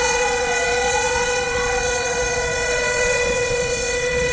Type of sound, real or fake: fake